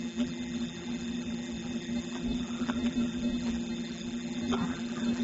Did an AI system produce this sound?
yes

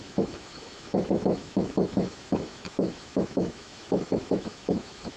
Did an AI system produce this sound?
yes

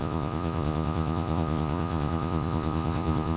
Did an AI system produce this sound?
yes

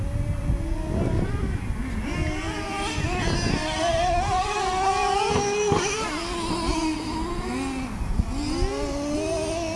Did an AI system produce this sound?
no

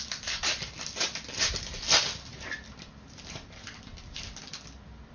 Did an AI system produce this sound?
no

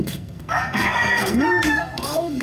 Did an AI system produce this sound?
yes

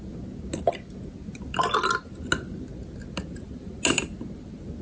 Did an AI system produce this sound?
no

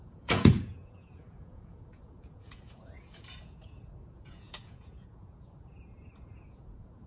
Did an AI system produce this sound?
yes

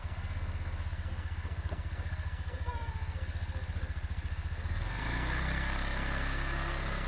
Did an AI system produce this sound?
yes